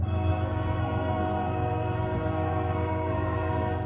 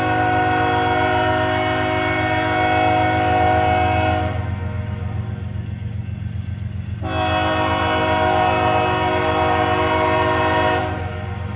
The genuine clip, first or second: second